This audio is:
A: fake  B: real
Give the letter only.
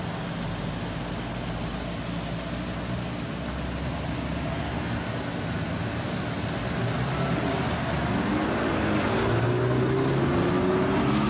B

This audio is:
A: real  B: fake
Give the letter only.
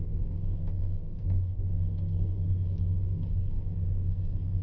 B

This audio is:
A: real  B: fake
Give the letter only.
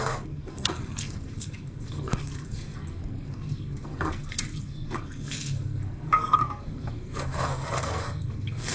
B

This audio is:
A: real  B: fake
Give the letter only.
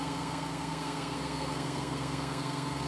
B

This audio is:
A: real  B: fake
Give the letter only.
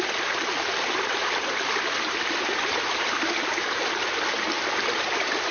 A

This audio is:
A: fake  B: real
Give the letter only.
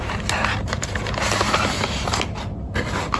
B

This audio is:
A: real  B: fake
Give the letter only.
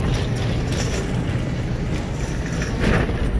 A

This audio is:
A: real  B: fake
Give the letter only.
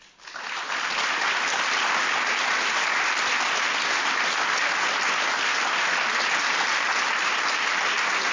A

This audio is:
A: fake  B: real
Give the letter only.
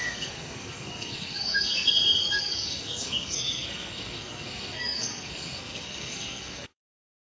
A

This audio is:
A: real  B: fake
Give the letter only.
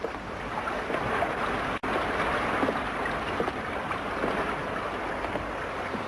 A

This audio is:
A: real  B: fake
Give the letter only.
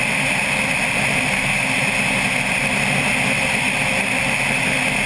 A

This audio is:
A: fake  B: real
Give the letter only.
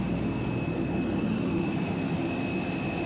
B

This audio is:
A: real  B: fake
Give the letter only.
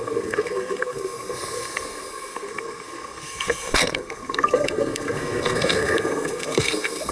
B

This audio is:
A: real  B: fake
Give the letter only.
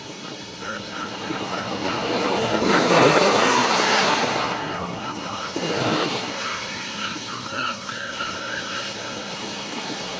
B